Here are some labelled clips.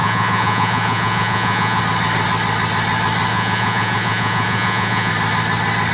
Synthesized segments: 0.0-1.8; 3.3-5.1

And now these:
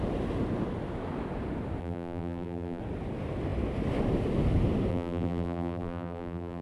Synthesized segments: 1.8-2.8; 4.9-6.6

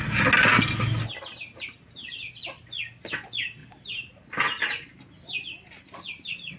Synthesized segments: none

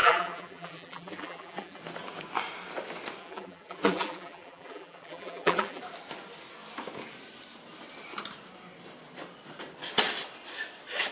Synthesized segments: 0.0-1.8; 3.2-5.8